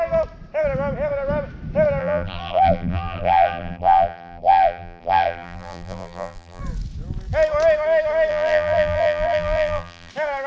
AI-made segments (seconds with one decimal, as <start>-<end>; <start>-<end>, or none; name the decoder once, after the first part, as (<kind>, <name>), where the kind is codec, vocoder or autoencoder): 2.0-6.6 (vocoder, BigVGAN v2); 8.3-10.1